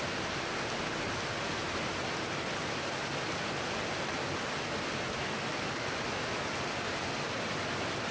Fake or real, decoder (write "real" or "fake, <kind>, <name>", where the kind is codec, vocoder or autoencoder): real